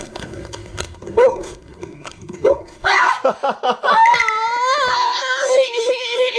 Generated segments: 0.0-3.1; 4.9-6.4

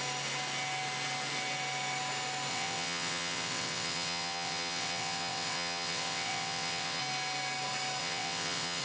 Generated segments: 2.5-7.0; 8.0-8.8

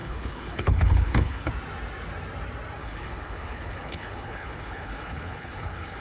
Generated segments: 0.0-1.5; 2.8-6.0

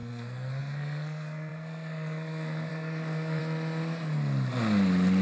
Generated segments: 0.0-3.4

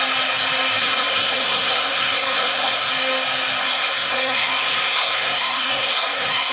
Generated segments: 0.8-2.9; 3.6-6.5

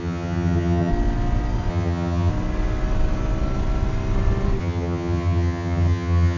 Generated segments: 0.0-0.9; 1.7-2.3; 4.6-6.4

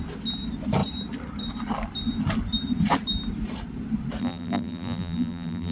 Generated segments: 4.2-5.7

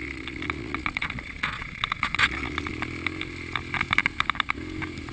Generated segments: 0.0-2.7